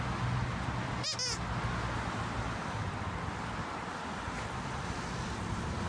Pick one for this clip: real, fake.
real